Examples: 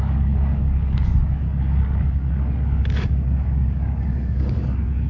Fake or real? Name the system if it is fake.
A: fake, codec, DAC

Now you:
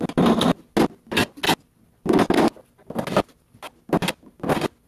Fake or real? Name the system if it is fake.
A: real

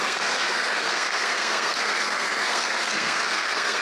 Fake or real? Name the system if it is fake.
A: fake, codec, SNAC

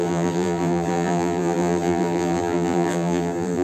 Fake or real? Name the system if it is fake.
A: fake, vocoder, BigVGAN v2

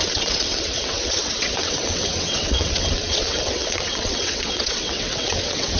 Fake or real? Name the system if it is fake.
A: fake, vocoder, WaveNeXt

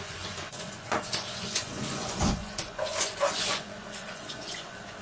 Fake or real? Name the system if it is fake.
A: fake, vocoder, Vocos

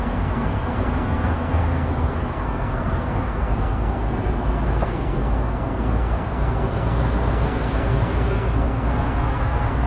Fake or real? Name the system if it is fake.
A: fake, codec, SNAC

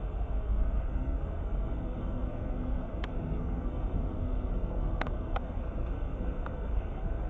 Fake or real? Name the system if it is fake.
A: fake, codec, SNAC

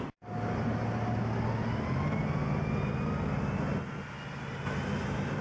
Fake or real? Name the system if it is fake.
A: real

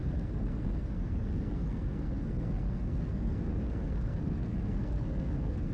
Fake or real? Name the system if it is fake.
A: fake, codec, SNAC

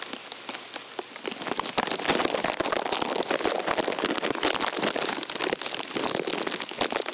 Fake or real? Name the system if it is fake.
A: real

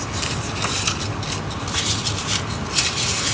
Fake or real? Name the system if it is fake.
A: real